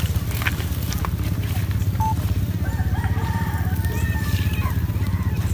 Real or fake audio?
real